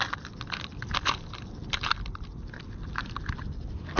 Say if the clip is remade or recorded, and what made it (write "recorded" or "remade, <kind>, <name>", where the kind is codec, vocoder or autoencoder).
recorded